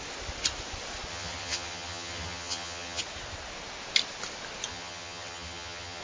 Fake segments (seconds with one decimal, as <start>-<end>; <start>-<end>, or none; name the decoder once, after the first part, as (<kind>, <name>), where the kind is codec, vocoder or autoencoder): 1.1-3.0 (vocoder, HiFi-GAN); 4.7-6.0